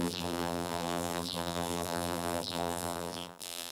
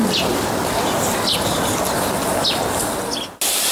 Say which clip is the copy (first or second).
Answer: first